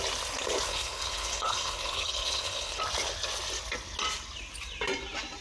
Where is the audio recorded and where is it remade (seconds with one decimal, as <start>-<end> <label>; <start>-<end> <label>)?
0.0-0.7 recorded; 0.7-2.8 remade; 2.8-5.4 recorded